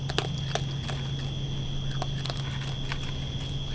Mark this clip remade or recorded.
recorded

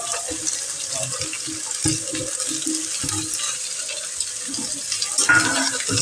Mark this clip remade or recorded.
recorded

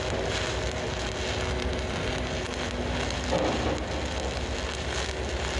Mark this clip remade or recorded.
recorded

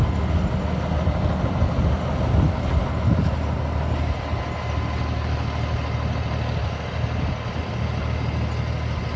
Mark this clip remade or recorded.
recorded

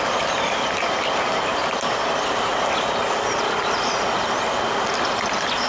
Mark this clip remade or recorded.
recorded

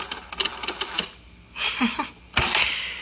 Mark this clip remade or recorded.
recorded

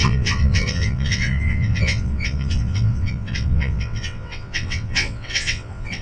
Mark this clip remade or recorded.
remade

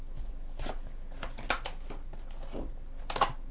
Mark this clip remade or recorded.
recorded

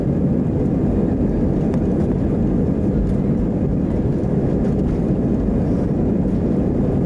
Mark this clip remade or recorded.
recorded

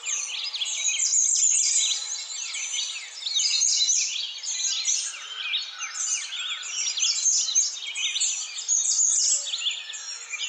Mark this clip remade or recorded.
recorded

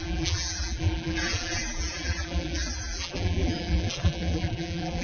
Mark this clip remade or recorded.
remade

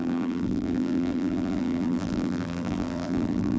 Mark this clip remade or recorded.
remade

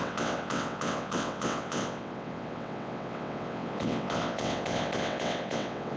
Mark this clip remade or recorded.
remade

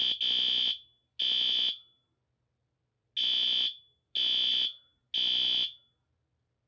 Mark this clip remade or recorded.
recorded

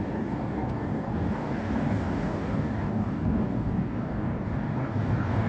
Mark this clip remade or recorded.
remade